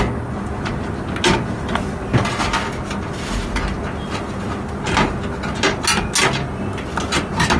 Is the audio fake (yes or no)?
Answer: no